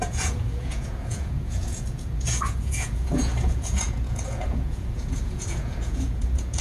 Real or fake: fake